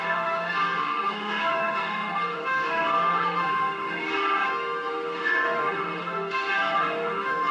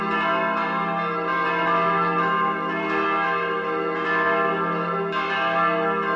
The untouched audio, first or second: second